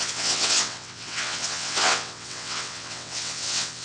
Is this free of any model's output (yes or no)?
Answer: no